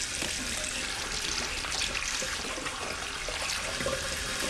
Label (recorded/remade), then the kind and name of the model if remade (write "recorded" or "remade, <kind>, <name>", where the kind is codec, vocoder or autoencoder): recorded